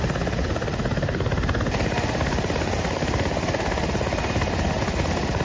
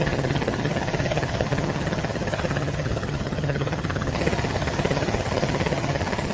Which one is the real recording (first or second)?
first